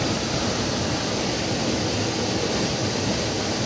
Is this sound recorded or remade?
recorded